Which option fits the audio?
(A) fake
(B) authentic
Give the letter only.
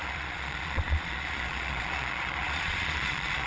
A